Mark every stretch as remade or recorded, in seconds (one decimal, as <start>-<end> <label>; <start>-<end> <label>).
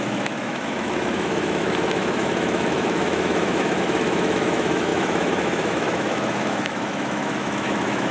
0.0-8.1 remade